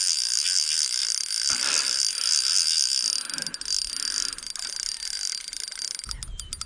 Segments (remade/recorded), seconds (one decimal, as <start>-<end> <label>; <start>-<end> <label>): 0.0-6.7 recorded